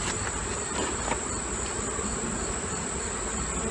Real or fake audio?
real